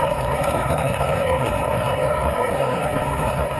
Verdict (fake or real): fake